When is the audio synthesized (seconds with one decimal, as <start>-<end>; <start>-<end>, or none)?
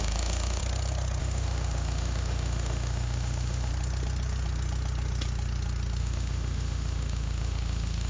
0.0-0.6; 1.2-3.7; 6.0-8.1